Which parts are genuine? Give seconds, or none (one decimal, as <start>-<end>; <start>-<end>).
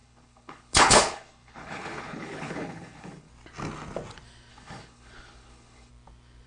3.3-4.5; 5.9-6.5